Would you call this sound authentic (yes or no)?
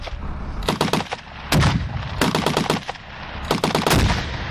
no